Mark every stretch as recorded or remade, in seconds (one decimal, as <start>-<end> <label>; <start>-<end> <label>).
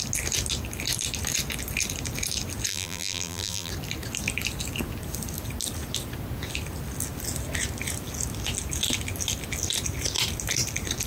0.0-2.7 recorded; 2.7-3.7 remade; 3.7-11.1 recorded